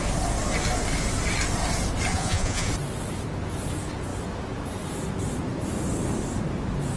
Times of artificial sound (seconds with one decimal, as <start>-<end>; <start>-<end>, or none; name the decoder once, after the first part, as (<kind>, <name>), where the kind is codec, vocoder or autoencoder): 2.1-2.7 (vocoder, Vocos)